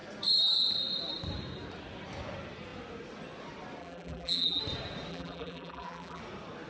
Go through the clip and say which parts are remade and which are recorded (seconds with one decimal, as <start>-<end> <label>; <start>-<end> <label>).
0.0-3.8 recorded; 3.8-4.6 remade; 4.6-5.1 recorded; 5.1-6.2 remade; 6.2-6.7 recorded

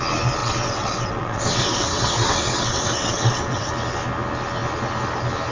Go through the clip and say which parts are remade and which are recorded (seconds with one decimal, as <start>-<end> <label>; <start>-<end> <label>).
0.0-0.4 recorded; 0.4-3.7 remade; 3.7-5.5 recorded

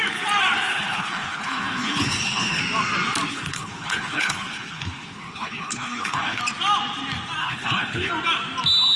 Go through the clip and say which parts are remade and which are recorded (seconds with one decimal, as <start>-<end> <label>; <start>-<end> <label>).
0.0-0.7 recorded; 0.7-2.6 remade; 2.6-3.3 recorded; 3.3-6.4 remade; 6.4-7.4 recorded; 7.4-8.1 remade; 8.1-9.0 recorded

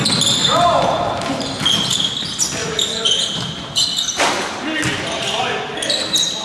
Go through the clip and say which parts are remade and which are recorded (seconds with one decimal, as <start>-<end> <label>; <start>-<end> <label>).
0.0-0.4 recorded; 0.4-2.1 remade; 2.1-6.4 recorded

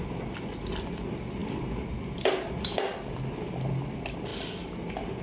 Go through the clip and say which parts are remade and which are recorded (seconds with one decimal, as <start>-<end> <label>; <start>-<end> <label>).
0.0-5.2 recorded

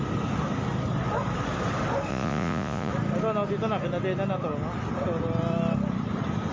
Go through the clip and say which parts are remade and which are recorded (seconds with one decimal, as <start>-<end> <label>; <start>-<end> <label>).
0.0-2.1 recorded; 2.1-2.9 remade; 2.9-6.5 recorded

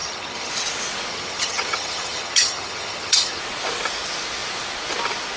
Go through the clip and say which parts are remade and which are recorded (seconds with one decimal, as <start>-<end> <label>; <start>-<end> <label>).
0.0-0.5 remade; 0.5-1.1 recorded; 1.1-3.4 remade; 3.4-5.4 recorded